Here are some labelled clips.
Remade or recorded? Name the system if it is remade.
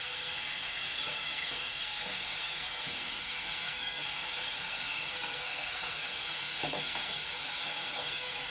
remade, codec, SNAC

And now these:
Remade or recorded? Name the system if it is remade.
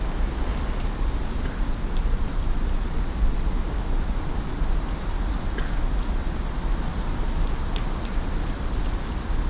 recorded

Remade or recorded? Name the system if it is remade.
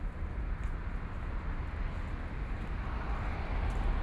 recorded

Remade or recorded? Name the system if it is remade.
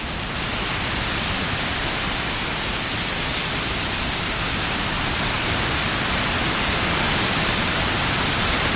recorded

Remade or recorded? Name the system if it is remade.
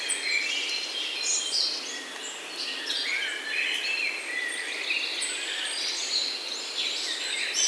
recorded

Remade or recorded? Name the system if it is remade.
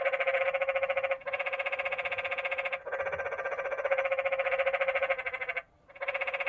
recorded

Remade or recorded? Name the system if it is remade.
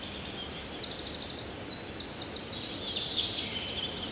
recorded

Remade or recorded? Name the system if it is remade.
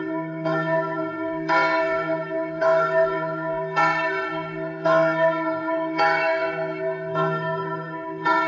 remade, codec, SNAC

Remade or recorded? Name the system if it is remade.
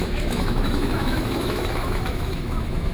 remade, autoencoder, DAC-VAE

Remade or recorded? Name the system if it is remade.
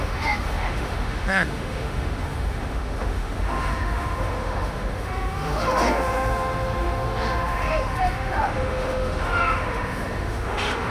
remade, autoencoder, DAC-VAE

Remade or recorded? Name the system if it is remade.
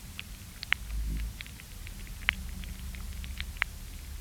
recorded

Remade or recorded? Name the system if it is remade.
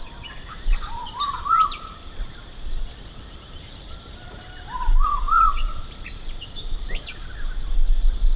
remade, vocoder, BigVGAN v2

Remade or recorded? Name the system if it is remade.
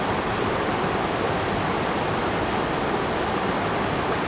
recorded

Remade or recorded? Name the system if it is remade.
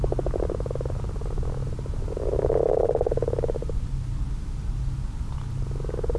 recorded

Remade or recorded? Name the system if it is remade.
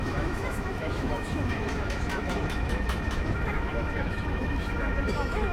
remade, autoencoder, DAC-VAE